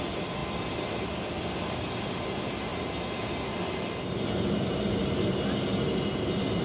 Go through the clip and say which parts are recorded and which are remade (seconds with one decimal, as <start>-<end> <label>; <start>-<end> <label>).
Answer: 0.0-6.6 recorded